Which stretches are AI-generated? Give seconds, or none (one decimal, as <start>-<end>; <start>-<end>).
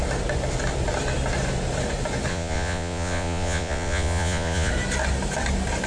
2.3-4.7